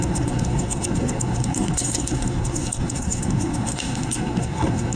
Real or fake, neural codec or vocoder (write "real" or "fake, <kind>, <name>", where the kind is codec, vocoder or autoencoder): fake, codec, SNAC